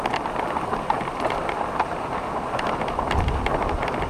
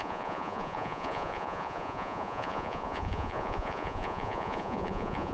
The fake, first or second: second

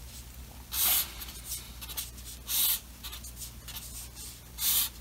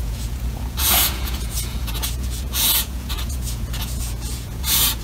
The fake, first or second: second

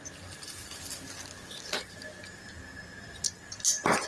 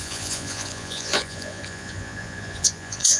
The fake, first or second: second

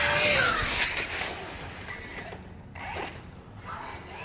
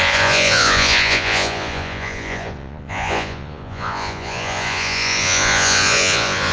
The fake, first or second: second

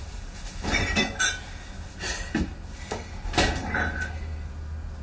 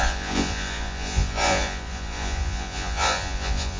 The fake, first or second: second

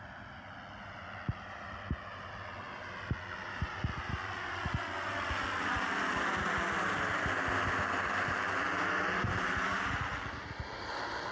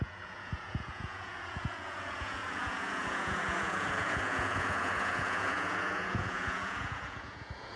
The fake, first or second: second